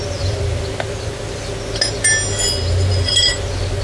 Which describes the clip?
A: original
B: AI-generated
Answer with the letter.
A